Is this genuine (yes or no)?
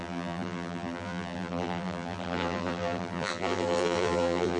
no